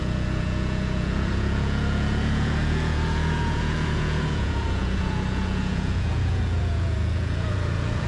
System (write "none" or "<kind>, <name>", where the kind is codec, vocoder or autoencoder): vocoder, Vocos